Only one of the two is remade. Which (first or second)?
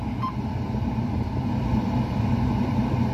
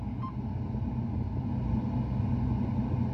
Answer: first